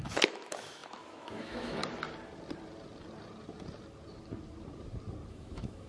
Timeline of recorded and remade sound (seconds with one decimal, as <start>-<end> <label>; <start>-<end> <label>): 0.0-1.8 remade; 1.8-5.3 recorded; 5.3-5.9 remade